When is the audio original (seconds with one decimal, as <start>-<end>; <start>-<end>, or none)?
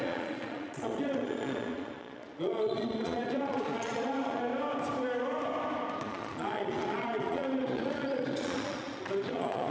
4.5-6.0